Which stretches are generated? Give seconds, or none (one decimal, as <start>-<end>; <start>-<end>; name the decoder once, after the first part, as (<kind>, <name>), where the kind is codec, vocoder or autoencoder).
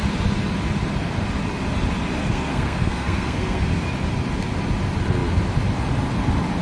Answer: 2.2-3.6 (codec, SNAC)